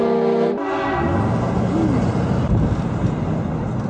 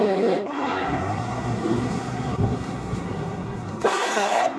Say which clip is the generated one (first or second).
second